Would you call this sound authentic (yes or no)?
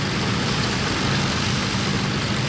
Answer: yes